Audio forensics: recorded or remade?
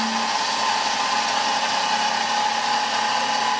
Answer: recorded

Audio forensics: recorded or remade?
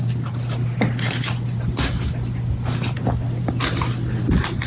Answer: recorded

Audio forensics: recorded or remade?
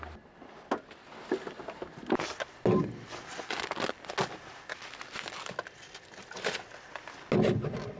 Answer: recorded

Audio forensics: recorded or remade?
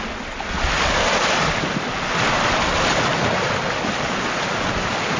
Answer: recorded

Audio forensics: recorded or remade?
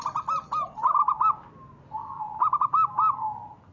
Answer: recorded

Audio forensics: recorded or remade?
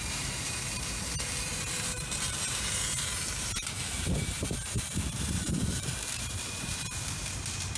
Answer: remade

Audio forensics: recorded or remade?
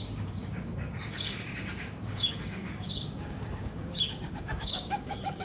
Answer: remade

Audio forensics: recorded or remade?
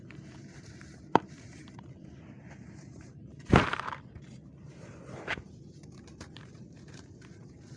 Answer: remade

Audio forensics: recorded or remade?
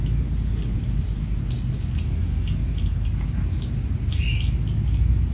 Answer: recorded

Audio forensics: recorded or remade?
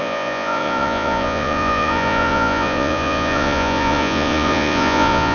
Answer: remade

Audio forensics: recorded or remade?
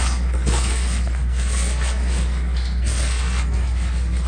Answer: remade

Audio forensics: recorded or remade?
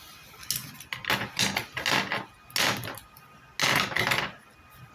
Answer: recorded